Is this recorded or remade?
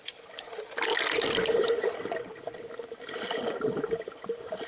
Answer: recorded